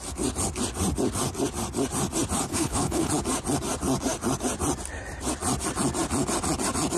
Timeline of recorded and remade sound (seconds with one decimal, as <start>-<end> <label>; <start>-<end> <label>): 0.0-2.5 recorded; 2.5-3.1 remade; 3.1-7.0 recorded